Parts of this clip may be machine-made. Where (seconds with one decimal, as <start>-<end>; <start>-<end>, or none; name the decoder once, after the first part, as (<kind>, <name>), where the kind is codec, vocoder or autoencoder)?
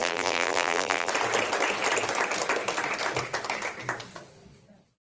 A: 0.0-1.1 (vocoder, BigVGAN v2)